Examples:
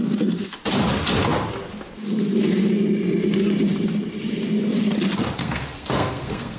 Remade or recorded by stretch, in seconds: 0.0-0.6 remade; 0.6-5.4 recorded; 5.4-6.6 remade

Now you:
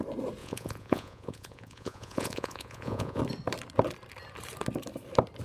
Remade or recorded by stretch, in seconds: 0.0-0.4 recorded; 0.4-3.2 remade; 3.2-5.4 recorded

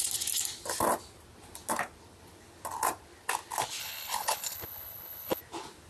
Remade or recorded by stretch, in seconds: 0.0-3.8 recorded; 3.8-5.4 remade; 5.4-5.9 recorded

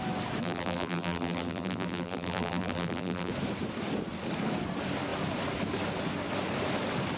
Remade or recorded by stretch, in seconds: 0.0-0.4 recorded; 0.4-3.3 remade; 3.3-7.2 recorded

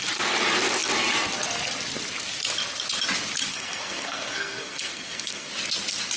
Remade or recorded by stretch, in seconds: 0.0-3.5 recorded; 3.5-5.5 remade; 5.5-6.2 recorded

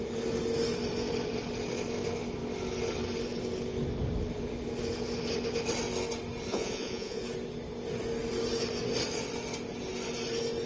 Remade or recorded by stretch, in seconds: 0.0-6.5 recorded; 6.5-7.2 remade; 7.2-10.7 recorded

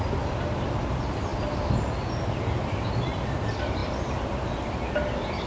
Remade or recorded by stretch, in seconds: 0.0-5.5 recorded

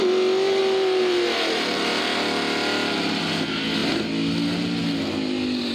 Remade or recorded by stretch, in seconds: 0.0-0.6 recorded; 0.6-2.0 remade; 2.0-5.7 recorded